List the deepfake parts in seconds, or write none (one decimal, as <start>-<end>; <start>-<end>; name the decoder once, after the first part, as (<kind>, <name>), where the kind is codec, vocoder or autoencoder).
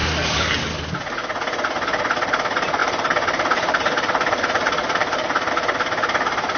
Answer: 2.8-5.5 (vocoder, BigVGAN v2)